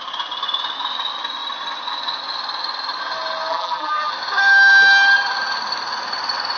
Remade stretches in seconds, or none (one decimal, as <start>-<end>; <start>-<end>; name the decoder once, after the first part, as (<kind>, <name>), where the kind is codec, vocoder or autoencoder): 3.5-4.1 (vocoder, BigVGAN v2)